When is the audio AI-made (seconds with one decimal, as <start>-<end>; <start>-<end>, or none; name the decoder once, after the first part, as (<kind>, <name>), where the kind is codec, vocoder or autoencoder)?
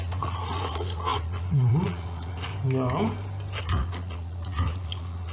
0.0-2.5 (vocoder, Vocos); 3.6-5.3